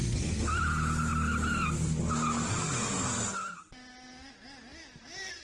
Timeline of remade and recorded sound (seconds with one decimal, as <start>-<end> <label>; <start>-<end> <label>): 0.0-0.6 remade; 0.6-5.4 recorded